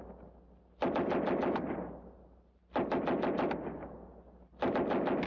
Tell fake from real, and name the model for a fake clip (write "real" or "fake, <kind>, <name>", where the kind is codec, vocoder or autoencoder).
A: real